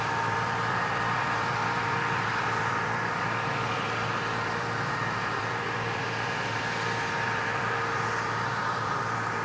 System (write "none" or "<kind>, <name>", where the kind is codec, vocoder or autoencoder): vocoder, BigVGAN v2